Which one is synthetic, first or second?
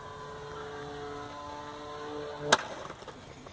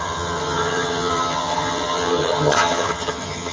second